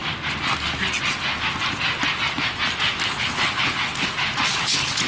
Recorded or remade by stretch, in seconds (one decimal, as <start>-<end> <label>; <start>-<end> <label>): 0.0-3.1 recorded; 3.1-3.9 remade; 3.9-4.6 recorded; 4.6-5.1 remade